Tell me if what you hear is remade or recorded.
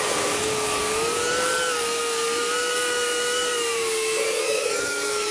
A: remade